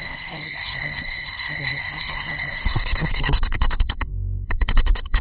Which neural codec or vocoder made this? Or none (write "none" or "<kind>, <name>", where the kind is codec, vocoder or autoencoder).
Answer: codec, SNAC